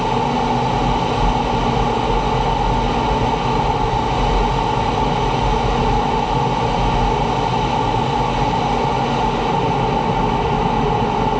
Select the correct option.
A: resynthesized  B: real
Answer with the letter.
B